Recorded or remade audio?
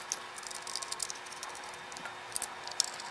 recorded